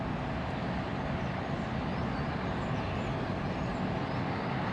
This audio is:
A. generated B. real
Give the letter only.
B